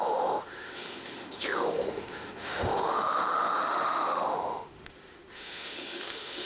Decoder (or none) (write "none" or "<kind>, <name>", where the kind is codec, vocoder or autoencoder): autoencoder, DAC-VAE